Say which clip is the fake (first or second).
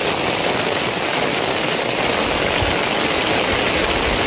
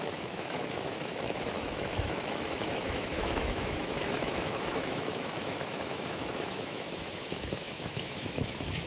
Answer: second